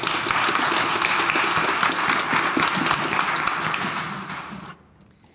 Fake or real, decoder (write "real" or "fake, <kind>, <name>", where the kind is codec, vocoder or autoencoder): real